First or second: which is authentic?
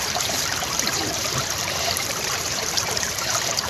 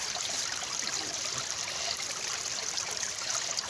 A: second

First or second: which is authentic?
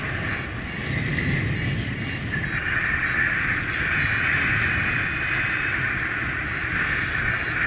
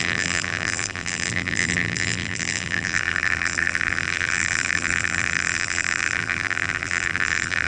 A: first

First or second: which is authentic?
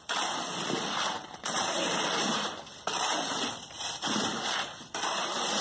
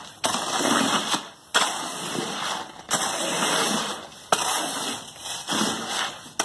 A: second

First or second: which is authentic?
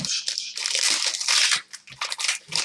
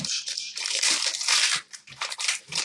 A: first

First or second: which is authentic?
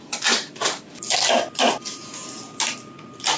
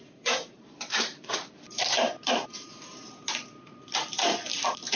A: first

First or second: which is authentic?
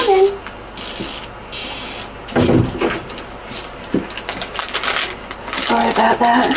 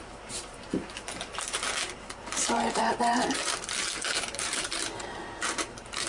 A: first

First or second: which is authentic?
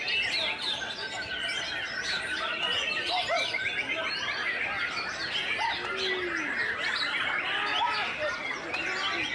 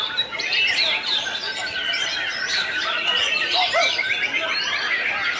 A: first